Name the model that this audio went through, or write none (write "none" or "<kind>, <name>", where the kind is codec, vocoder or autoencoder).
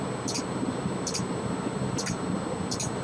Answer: none